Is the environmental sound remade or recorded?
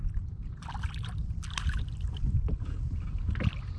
remade